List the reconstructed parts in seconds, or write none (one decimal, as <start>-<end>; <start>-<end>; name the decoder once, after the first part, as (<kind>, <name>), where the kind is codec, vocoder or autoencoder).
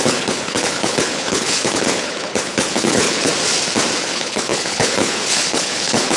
0.0-3.3 (codec, HILCodec); 4.0-6.2